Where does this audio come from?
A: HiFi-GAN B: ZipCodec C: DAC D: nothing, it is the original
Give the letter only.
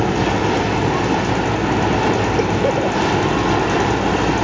D